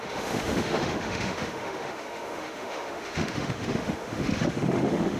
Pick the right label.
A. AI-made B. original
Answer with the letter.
A